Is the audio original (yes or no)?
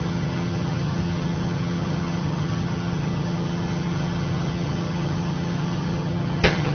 no